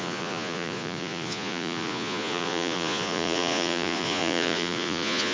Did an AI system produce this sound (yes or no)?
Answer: yes